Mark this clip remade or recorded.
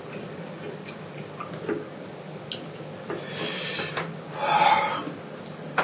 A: recorded